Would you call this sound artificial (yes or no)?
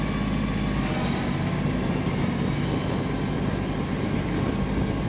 no